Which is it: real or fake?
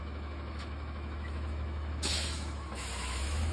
fake